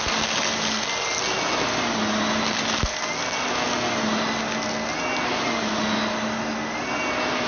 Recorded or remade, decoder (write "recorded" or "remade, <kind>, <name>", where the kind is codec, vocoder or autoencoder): recorded